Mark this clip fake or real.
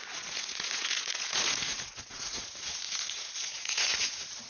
fake